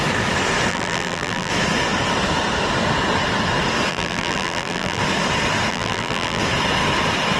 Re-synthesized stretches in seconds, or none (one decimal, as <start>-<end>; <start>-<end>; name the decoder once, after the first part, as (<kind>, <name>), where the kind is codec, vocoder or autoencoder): 0.7-1.5 (vocoder, BigVGAN v2); 3.9-5.0; 5.7-6.4